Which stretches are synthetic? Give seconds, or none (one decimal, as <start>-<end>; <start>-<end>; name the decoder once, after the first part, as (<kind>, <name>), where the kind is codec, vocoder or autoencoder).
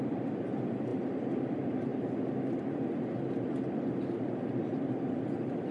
none